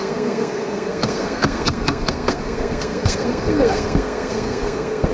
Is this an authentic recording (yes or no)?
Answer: no